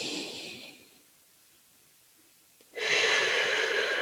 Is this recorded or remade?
remade